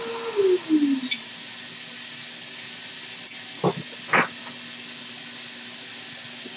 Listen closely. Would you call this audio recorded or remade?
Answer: recorded